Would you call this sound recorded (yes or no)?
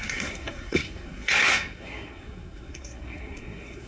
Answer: no